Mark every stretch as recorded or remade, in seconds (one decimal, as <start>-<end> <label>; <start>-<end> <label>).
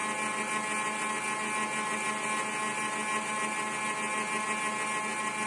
0.0-5.5 recorded